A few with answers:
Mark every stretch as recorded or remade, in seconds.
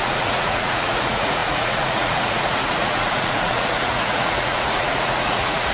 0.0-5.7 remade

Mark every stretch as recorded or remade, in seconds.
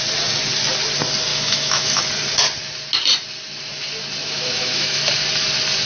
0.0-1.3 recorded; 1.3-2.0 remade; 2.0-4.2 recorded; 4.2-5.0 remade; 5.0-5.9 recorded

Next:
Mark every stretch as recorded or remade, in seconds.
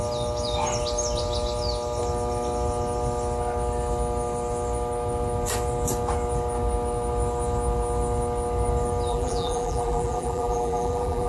0.0-9.1 recorded; 9.1-11.3 remade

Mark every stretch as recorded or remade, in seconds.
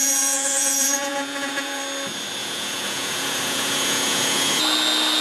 0.0-1.8 remade; 1.8-2.4 recorded; 2.4-4.6 remade; 4.6-5.2 recorded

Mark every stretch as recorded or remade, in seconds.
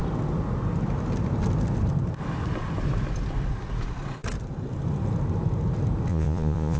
0.0-6.1 recorded; 6.1-6.8 remade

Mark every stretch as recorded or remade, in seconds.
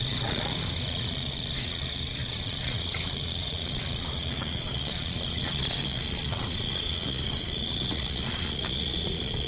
0.0-9.5 remade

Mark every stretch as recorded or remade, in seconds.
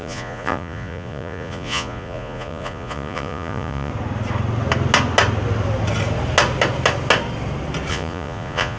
0.0-3.9 remade; 3.9-7.9 recorded; 7.9-8.8 remade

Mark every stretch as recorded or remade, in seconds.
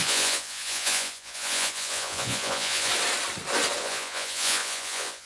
0.0-2.9 remade; 2.9-3.8 recorded; 3.8-5.3 remade